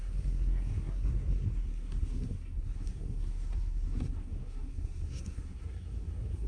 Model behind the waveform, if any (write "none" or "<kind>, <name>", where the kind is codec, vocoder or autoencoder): codec, SNAC